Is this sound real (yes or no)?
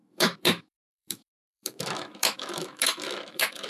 no